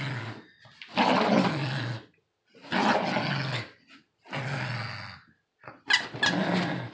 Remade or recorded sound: recorded